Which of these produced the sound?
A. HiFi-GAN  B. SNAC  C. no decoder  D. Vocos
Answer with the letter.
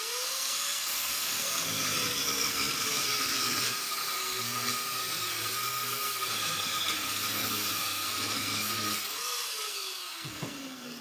B